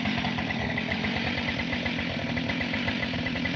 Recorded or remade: remade